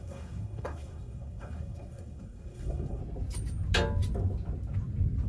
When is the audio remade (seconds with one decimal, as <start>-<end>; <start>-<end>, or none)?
0.0-3.0